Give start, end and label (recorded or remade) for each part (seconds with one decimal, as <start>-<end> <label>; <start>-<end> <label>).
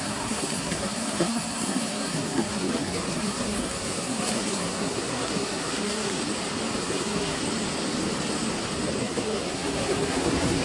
0.0-6.2 remade; 6.2-6.8 recorded; 6.8-7.4 remade; 7.4-9.0 recorded; 9.0-10.6 remade